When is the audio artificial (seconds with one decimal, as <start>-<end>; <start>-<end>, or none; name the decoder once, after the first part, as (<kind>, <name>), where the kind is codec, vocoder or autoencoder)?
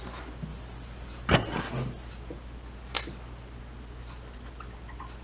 none